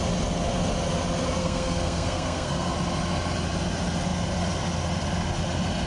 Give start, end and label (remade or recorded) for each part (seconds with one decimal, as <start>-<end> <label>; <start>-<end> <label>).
0.0-1.4 recorded; 1.4-2.7 remade; 2.7-5.9 recorded